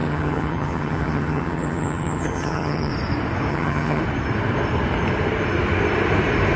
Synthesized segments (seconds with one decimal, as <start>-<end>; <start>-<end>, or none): 0.0-2.9; 3.5-4.0